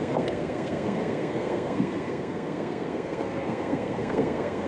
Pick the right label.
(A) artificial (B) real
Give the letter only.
A